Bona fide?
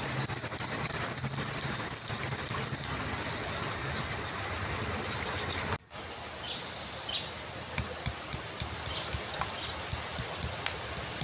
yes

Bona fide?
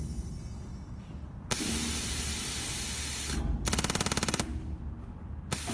yes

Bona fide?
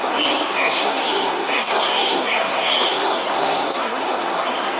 no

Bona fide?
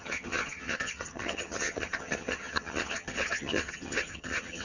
no